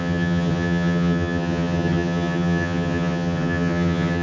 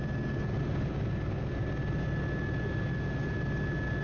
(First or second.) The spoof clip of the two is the first